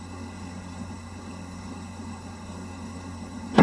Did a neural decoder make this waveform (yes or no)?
yes